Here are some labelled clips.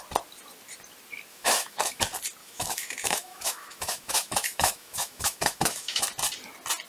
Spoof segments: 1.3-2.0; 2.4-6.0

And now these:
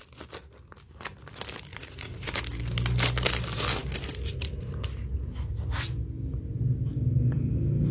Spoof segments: 1.7-2.4

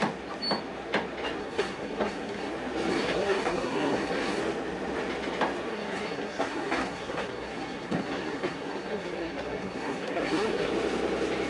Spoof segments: 1.4-2.5; 2.9-4.4; 5.7-10.7

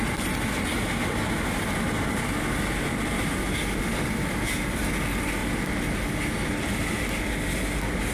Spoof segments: none